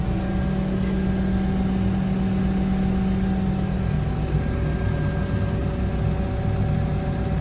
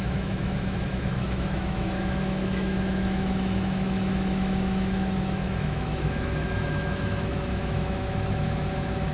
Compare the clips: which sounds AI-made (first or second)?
second